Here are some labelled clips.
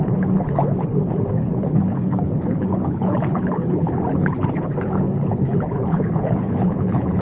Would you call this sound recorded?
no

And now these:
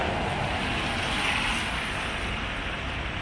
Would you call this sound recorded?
yes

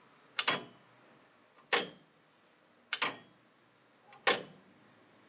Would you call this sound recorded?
yes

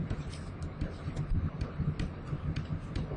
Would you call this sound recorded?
yes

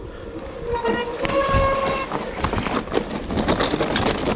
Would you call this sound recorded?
yes